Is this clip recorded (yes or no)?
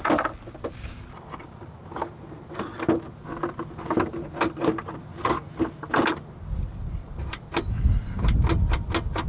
yes